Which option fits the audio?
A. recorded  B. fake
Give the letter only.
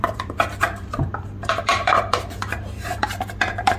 B